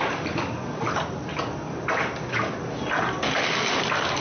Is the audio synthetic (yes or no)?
no